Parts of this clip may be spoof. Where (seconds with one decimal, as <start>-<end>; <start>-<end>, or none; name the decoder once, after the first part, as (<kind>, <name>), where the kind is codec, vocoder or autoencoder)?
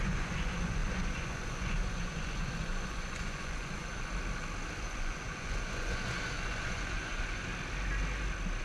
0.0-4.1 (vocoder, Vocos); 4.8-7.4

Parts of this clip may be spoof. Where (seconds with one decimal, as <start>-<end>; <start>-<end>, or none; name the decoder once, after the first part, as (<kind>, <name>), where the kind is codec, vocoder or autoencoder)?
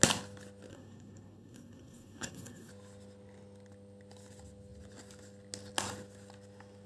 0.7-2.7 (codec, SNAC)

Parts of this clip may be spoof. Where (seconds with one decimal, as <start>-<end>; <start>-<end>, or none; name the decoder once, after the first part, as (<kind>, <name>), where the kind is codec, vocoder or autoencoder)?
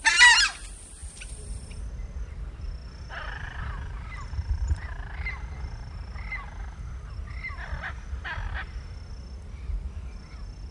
1.0-1.8 (vocoder, BigVGAN v2); 2.8-4.9; 7.3-9.0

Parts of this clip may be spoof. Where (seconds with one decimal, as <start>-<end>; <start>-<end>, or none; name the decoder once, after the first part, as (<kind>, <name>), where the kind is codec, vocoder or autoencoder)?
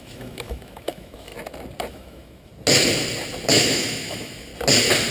0.0-1.3 (autoencoder, DAC-VAE); 1.9-2.5; 3.5-4.5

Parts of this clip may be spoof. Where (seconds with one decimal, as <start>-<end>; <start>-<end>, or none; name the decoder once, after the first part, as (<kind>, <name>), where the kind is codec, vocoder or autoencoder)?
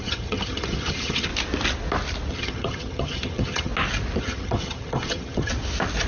0.0-1.3 (vocoder, HiFi-GAN); 2.3-3.7; 4.2-5.5